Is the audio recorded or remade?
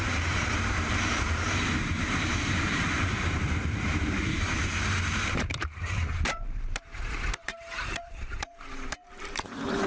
remade